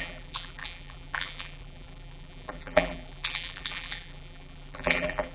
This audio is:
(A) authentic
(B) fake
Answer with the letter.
B